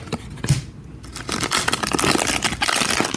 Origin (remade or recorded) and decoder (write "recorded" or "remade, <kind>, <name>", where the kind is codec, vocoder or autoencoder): recorded